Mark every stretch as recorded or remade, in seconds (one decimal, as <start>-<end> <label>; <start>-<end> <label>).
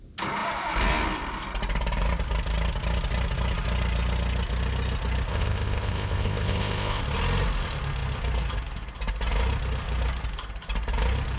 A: 0.0-5.3 recorded; 5.3-7.0 remade; 7.0-11.4 recorded